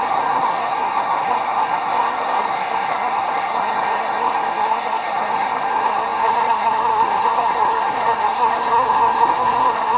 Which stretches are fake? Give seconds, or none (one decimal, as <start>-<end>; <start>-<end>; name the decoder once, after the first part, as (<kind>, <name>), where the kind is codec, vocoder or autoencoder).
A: 0.0-10.0 (codec, SNAC)

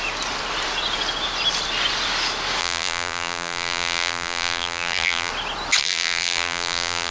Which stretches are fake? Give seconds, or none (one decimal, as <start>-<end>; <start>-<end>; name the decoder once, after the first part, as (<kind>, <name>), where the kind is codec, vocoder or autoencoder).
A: 2.6-5.3 (vocoder, BigVGAN v2); 5.8-7.1

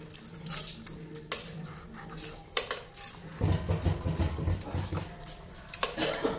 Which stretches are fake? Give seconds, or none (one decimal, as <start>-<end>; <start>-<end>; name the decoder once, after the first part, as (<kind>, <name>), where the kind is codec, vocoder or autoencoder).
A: none

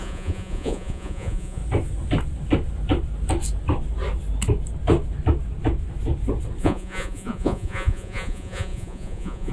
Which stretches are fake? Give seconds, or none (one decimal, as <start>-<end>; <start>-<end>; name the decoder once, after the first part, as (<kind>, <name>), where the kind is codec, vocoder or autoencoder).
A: 0.0-1.6 (vocoder, Vocos); 6.6-9.5